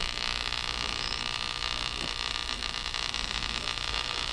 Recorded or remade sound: remade